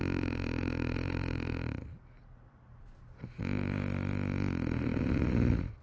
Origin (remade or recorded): recorded